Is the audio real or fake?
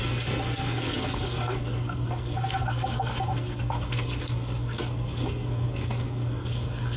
fake